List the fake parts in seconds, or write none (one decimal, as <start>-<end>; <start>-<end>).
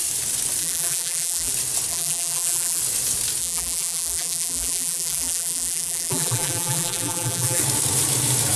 0.6-1.5; 1.9-2.8; 3.4-7.6